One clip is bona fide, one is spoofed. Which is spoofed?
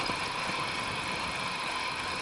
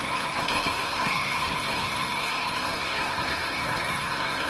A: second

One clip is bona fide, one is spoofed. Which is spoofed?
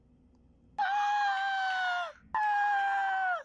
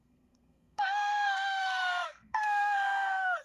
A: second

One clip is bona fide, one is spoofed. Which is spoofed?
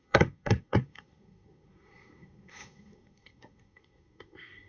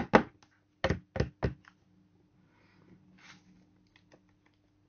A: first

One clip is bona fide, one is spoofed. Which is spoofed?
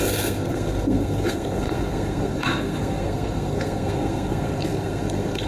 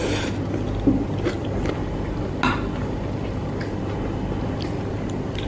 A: first